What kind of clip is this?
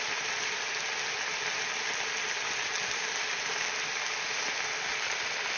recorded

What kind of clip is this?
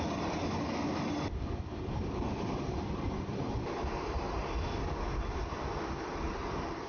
recorded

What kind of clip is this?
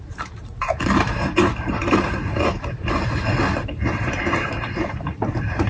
remade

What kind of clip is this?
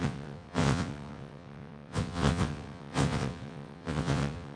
remade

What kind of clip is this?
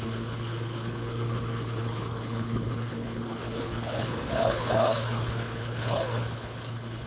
remade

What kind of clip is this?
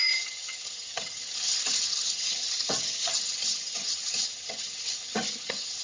remade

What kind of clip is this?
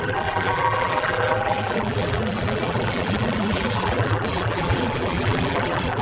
remade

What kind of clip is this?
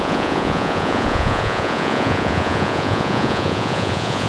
remade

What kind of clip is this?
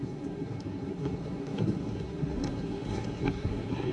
remade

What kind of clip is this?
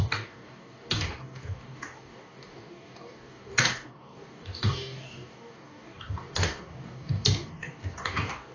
remade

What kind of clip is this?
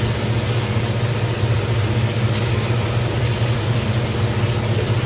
recorded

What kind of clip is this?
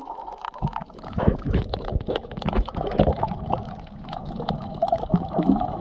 remade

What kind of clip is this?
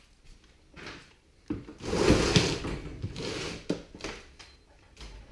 recorded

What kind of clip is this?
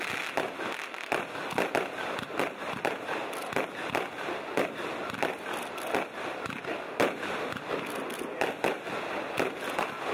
recorded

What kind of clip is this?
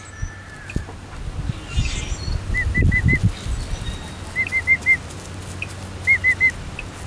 recorded